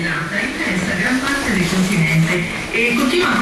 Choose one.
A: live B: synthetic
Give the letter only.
A